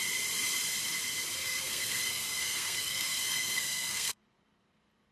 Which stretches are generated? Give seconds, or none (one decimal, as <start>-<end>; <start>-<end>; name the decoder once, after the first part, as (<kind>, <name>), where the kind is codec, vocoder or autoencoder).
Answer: 1.4-4.2 (codec, SNAC)